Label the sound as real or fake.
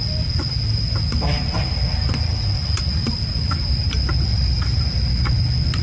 real